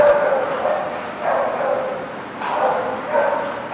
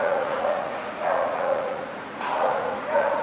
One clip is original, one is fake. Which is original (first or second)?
first